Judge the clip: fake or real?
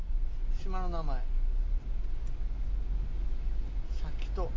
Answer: real